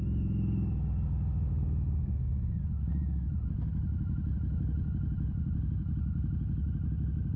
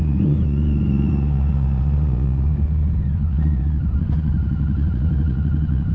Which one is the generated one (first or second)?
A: second